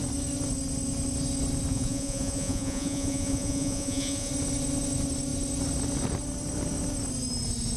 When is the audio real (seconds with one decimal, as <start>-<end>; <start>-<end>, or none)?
0.0-1.7; 4.3-7.8